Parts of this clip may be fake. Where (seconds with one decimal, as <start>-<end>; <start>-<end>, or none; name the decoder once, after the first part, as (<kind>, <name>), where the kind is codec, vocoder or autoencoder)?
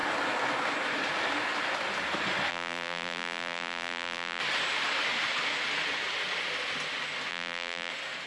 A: 2.5-4.4 (vocoder, BigVGAN v2); 7.3-7.9